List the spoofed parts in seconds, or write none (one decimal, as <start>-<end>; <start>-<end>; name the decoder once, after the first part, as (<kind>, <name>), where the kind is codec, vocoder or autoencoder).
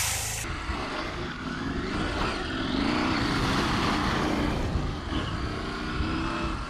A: 0.9-1.7 (codec, DAC)